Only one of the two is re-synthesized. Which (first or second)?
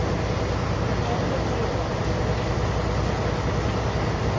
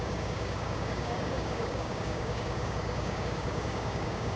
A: second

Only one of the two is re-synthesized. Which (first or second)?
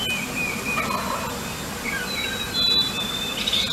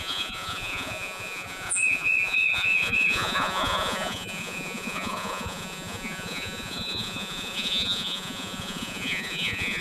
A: second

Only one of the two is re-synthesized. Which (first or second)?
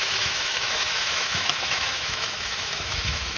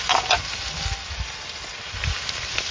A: first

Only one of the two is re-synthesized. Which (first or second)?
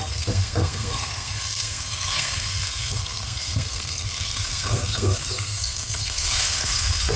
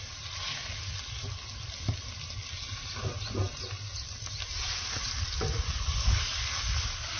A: first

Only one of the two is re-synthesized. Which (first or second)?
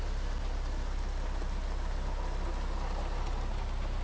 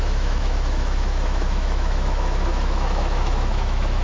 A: second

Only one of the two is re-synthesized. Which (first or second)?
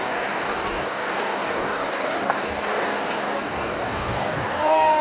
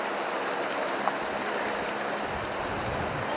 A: first